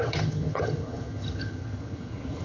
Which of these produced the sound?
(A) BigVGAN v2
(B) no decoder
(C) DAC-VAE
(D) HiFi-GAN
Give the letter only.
D